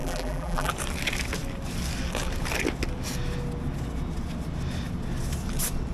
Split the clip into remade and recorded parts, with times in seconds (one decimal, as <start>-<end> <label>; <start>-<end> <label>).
0.0-0.7 remade; 0.7-5.9 recorded